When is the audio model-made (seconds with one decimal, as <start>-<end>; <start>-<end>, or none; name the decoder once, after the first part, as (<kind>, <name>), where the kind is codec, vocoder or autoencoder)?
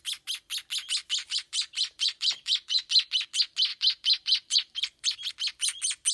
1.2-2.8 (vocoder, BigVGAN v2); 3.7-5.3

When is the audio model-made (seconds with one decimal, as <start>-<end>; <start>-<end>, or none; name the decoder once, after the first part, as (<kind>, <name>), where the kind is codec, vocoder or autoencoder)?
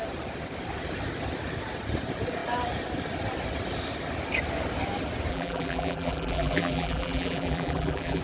5.3-8.2 (vocoder, BigVGAN v2)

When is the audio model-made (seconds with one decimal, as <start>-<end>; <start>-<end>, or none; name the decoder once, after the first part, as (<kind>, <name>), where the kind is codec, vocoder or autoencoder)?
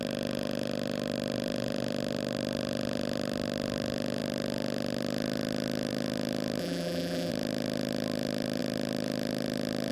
6.6-7.3 (vocoder, BigVGAN v2)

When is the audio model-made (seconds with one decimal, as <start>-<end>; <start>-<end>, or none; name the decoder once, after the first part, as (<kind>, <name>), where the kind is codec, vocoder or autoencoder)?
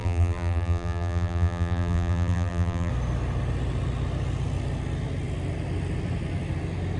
0.0-2.9 (vocoder, BigVGAN v2)